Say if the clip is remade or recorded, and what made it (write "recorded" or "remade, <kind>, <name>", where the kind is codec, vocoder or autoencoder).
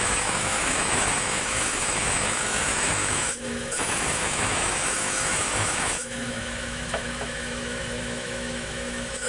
remade, autoencoder, DAC-VAE